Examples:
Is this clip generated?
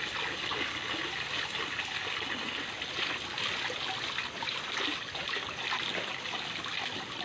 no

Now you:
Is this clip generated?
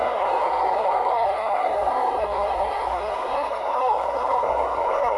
yes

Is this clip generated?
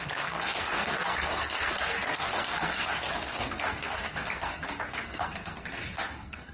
yes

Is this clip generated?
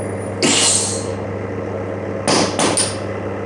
no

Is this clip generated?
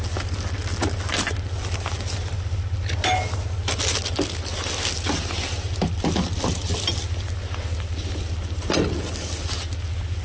no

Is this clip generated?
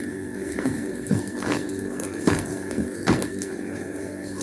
yes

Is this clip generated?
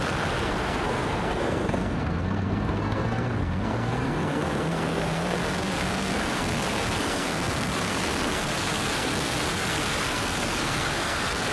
yes